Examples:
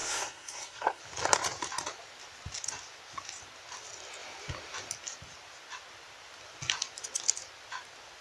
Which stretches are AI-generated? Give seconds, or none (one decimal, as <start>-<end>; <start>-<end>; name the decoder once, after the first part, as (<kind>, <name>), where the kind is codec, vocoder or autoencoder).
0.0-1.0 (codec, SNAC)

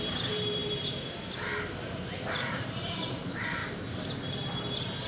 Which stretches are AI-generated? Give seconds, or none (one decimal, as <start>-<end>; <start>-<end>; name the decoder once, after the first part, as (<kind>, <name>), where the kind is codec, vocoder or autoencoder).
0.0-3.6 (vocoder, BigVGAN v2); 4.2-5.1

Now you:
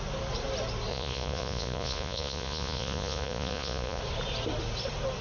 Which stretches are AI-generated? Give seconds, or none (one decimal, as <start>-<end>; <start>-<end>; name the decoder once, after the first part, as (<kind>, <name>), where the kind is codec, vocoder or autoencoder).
0.9-4.0 (vocoder, Vocos)

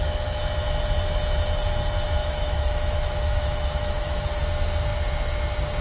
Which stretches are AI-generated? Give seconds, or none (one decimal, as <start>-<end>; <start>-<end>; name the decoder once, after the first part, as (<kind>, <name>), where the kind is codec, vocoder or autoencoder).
2.2-4.4 (autoencoder, DAC-VAE)

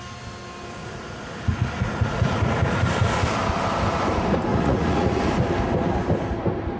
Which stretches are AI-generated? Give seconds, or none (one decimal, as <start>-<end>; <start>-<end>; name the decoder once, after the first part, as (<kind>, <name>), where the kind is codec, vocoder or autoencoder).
0.8-2.9 (vocoder, Vocos); 4.5-5.3

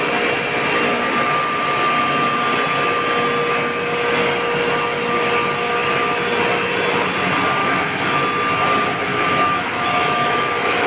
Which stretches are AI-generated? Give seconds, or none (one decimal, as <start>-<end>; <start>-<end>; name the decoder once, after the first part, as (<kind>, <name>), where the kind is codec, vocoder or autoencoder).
7.6-8.2 (autoencoder, DAC-VAE); 9.1-10.9

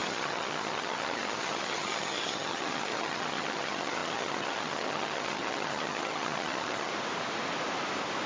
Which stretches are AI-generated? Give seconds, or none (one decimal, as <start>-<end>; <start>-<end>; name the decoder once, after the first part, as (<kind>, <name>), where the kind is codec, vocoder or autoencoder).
0.0-6.9 (vocoder, HiFi-GAN)

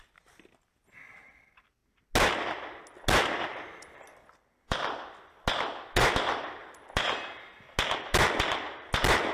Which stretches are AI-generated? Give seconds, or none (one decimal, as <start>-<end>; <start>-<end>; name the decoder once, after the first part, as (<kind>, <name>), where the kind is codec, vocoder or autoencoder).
none